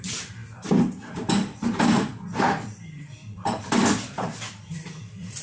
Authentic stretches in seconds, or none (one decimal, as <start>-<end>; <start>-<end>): none